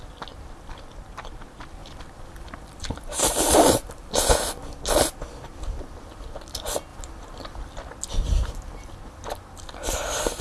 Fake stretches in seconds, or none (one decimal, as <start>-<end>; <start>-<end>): 1.8-4.3